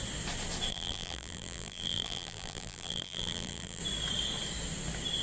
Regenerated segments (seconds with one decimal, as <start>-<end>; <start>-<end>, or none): 0.7-3.8